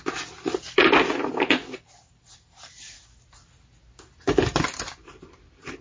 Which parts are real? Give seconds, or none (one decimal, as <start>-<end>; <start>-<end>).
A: 0.0-5.8